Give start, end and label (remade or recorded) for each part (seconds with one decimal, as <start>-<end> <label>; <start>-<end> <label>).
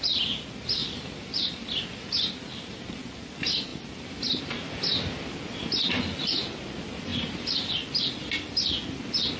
0.0-0.8 recorded; 0.8-2.4 remade; 2.4-3.7 recorded; 3.7-4.4 remade; 4.4-7.1 recorded; 7.1-7.7 remade; 7.7-9.4 recorded